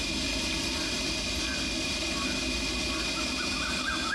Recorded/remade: recorded